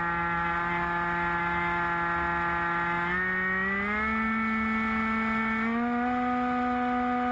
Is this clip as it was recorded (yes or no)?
yes